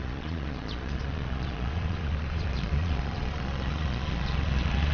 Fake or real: fake